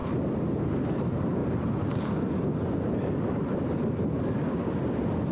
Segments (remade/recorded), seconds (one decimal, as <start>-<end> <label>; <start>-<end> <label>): 0.0-1.4 recorded; 1.4-4.6 remade; 4.6-5.3 recorded